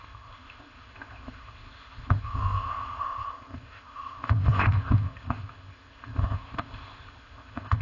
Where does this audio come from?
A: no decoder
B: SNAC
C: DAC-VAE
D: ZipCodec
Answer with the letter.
D